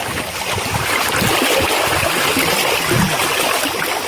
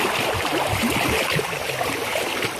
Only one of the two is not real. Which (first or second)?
second